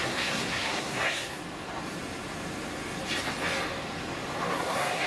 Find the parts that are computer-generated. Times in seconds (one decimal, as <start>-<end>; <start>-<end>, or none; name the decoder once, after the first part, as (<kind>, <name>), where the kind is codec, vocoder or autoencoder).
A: 0.0-1.4 (codec, SNAC); 4.5-5.1

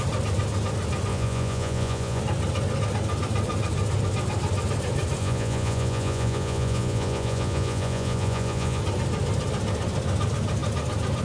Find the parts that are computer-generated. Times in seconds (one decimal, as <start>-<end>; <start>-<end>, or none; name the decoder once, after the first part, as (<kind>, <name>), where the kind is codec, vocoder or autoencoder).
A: 1.1-2.2 (vocoder, Vocos); 5.2-8.8